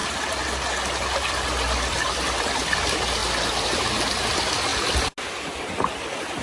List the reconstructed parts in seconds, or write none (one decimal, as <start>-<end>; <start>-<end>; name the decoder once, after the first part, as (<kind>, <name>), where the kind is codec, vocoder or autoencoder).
0.8-4.7 (vocoder, BigVGAN v2); 5.6-6.4

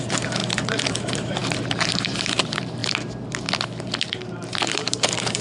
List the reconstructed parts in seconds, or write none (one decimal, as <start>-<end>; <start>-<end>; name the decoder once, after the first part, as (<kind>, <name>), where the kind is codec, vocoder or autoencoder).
0.0-2.8 (vocoder, BigVGAN v2); 4.1-5.4